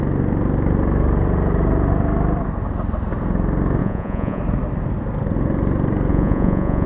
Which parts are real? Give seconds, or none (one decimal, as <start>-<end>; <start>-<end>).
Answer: 0.0-3.8; 4.4-6.1